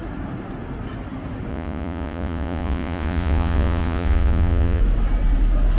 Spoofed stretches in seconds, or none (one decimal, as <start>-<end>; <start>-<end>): 1.5-4.8